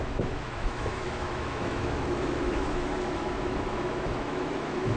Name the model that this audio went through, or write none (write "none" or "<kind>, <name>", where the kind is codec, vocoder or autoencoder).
autoencoder, DAC-VAE